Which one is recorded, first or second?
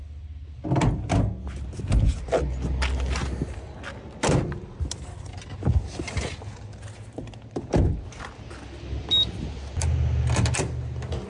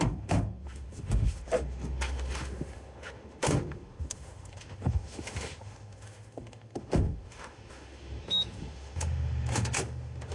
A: first